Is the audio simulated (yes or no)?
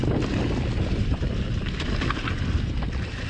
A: no